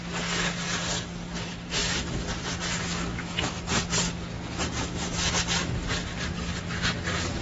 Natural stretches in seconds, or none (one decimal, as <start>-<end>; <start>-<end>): 0.0-3.1; 3.6-7.4

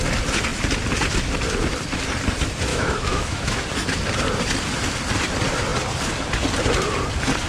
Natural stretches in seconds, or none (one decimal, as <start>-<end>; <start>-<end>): 0.0-2.7; 3.6-7.5

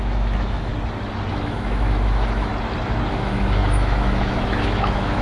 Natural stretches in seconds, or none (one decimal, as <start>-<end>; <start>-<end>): 0.7-1.3; 2.5-3.1

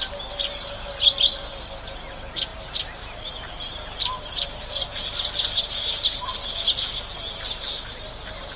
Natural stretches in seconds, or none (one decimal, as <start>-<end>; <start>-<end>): 0.0-8.6

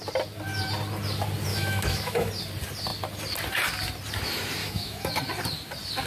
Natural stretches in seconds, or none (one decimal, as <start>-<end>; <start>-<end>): 0.0-1.5; 2.3-4.6; 5.1-6.1

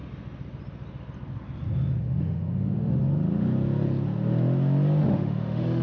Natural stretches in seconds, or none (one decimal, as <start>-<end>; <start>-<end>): 0.0-2.0; 3.0-5.0

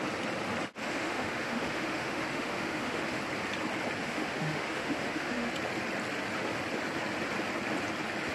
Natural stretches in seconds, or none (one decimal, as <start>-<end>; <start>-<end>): 0.0-0.8; 3.2-4.0; 5.5-8.3

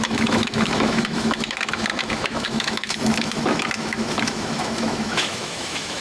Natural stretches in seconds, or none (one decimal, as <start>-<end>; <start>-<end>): none